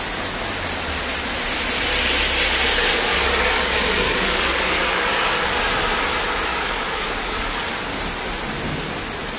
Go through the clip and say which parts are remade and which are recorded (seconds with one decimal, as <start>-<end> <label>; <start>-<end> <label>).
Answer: 0.0-3.1 recorded; 3.1-5.6 remade; 5.6-6.5 recorded; 6.5-7.7 remade; 7.7-9.4 recorded